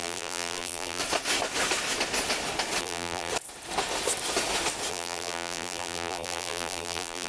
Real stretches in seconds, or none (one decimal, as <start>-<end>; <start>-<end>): 1.0-2.8; 3.3-4.9